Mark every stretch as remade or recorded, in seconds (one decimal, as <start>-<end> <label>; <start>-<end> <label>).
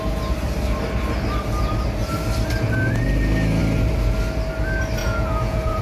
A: 0.0-5.0 recorded; 5.0-5.8 remade